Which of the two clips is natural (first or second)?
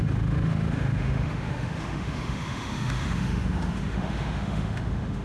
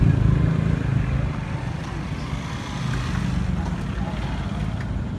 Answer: second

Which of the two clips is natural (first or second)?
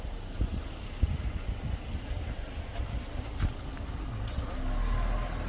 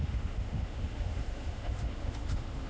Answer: first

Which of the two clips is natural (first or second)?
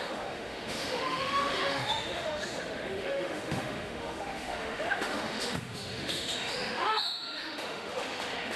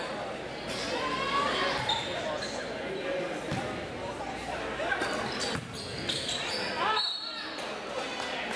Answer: second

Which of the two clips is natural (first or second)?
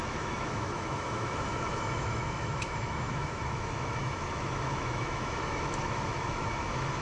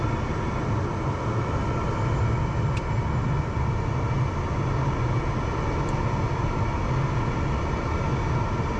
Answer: second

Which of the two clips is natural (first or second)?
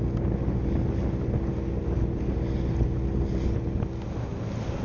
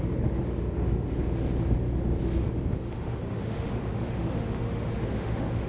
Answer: first